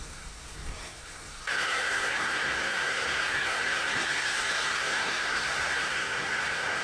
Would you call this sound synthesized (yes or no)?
yes